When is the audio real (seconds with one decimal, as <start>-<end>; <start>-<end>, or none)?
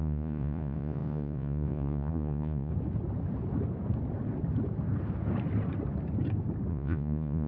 2.7-6.7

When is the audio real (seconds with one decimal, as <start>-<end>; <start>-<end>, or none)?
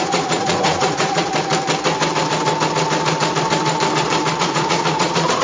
1.3-4.4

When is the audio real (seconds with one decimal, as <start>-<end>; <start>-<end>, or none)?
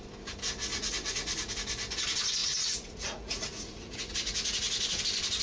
0.0-0.7; 1.5-2.4; 5.0-5.4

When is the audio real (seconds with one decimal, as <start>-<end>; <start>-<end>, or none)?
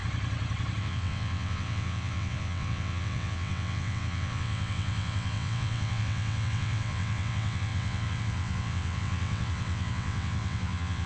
0.0-0.8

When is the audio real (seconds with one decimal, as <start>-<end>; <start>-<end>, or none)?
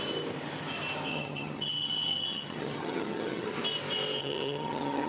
0.0-1.1; 3.6-4.2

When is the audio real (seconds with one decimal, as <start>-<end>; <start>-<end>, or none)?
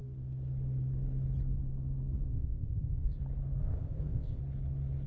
0.0-2.3; 3.2-3.6; 4.4-5.1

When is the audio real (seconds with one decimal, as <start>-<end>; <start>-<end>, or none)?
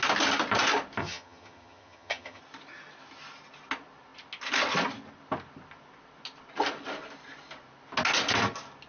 0.0-1.0; 2.4-8.9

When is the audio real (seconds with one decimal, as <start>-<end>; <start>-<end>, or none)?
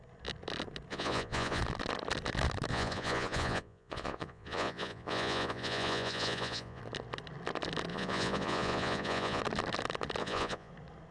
0.0-0.9; 1.6-2.7; 6.8-7.9; 9.4-10.2; 10.7-11.1